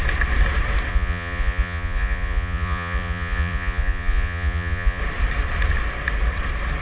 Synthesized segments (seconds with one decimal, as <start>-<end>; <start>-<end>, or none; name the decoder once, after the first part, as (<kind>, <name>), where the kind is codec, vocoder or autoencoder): 0.9-5.0 (vocoder, Vocos)